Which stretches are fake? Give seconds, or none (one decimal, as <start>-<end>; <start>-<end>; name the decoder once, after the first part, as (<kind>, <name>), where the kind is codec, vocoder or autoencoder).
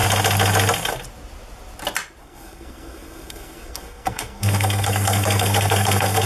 2.2-6.3 (codec, SNAC)